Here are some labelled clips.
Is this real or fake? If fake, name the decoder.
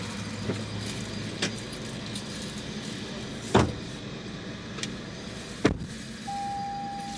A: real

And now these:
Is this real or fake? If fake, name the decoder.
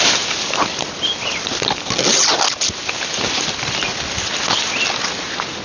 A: real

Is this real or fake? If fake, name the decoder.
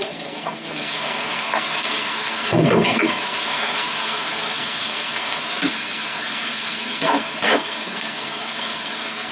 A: fake, codec, SNAC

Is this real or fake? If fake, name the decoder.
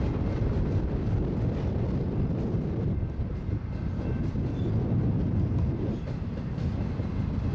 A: real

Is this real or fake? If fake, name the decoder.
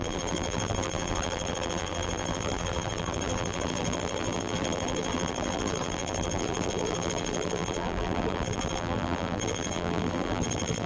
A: fake, vocoder, BigVGAN v2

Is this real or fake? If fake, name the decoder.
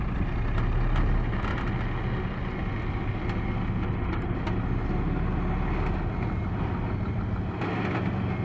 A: real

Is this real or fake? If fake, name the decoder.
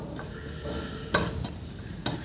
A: real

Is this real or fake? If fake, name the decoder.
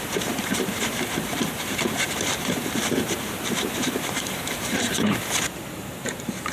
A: fake, vocoder, BigVGAN v2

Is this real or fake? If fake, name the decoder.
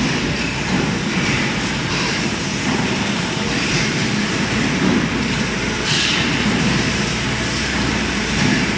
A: fake, vocoder, BigVGAN v2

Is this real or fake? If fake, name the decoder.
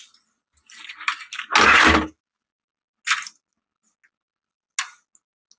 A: real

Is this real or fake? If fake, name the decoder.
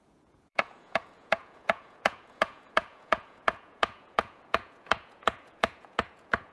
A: fake, vocoder, Vocos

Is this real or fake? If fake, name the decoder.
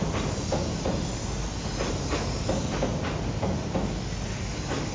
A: real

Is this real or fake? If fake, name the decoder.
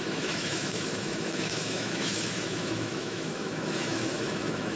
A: fake, autoencoder, DAC-VAE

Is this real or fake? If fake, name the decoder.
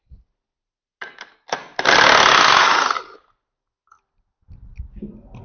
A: real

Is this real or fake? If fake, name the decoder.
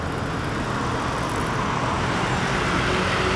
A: real